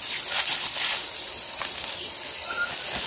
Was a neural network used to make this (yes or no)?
no